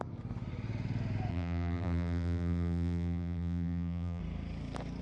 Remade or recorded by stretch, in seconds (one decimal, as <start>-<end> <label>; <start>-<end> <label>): 0.0-1.3 recorded; 1.3-4.2 remade; 4.2-5.0 recorded